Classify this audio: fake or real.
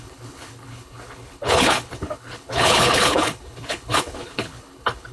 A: fake